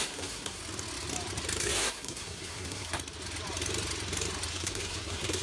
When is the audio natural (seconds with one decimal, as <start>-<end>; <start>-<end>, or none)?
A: 0.6-1.6; 2.9-4.5